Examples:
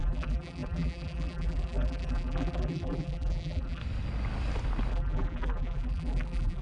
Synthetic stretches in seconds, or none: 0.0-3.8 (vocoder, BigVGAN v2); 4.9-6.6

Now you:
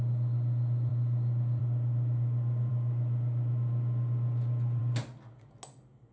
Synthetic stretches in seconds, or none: none

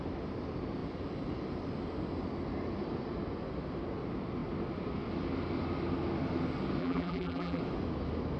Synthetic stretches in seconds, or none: 6.8-7.6 (vocoder, BigVGAN v2)